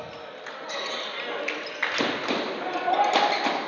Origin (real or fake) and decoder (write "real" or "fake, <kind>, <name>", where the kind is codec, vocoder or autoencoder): real